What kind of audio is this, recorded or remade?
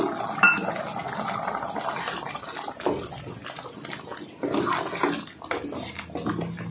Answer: recorded